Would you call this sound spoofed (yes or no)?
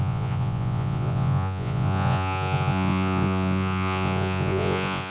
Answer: yes